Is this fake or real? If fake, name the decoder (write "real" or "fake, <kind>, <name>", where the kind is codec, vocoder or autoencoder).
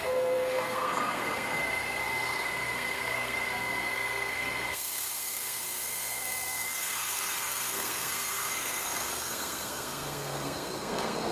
fake, codec, SNAC